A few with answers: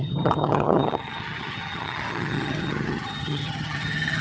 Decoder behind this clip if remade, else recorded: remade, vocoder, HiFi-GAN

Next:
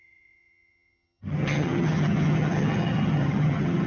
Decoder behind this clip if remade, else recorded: remade, vocoder, HiFi-GAN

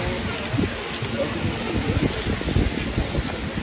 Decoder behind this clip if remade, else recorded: recorded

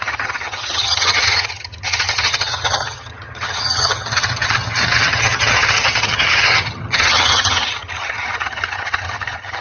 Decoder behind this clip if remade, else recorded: remade, vocoder, HiFi-GAN